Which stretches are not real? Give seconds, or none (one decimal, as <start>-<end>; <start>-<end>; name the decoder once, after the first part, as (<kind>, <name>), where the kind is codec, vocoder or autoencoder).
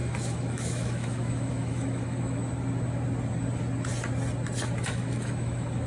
0.0-2.4 (autoencoder, DAC-VAE); 4.9-5.9